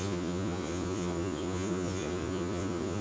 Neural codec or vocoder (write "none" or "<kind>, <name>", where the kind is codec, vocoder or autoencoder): vocoder, Vocos